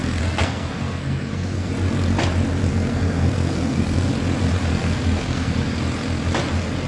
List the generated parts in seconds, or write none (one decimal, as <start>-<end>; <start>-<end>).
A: 0.0-1.7; 2.7-4.1; 4.7-5.8